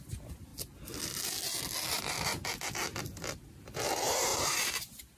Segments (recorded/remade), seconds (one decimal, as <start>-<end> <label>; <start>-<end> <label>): 0.0-0.5 remade; 0.5-1.9 recorded; 1.9-2.3 remade; 2.3-3.0 recorded; 3.0-5.2 remade